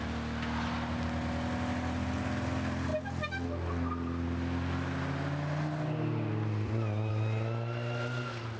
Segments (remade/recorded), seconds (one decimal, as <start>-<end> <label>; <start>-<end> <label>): 0.0-8.6 recorded